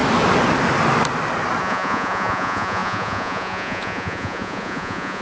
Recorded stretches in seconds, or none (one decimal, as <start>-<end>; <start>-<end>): 0.0-1.6